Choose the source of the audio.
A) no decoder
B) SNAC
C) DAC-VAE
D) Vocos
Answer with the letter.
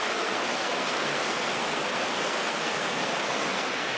B